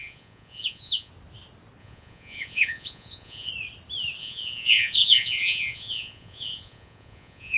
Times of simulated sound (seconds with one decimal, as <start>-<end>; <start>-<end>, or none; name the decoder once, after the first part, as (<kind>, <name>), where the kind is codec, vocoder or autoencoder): 0.0-1.1 (vocoder, Vocos); 1.8-3.5; 4.2-7.6